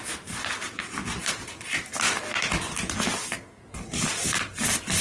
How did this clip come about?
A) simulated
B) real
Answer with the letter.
B